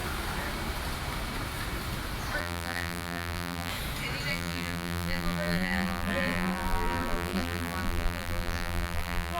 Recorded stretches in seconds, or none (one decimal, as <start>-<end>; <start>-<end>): 0.0-2.4; 3.7-4.3